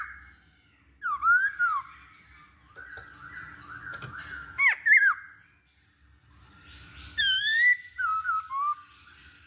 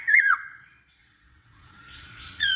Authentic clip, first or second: first